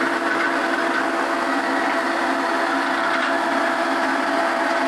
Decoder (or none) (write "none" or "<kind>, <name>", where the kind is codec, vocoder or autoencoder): none